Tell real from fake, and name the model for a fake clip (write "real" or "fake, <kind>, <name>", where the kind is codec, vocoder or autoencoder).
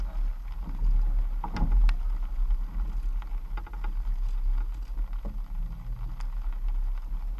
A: real